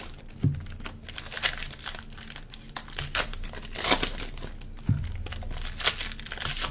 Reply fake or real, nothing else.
real